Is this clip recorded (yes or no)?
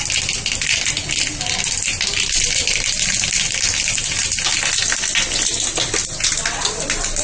yes